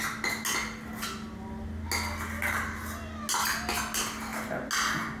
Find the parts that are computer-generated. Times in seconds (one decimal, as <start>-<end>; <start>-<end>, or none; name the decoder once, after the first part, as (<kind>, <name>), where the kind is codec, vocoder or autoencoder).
none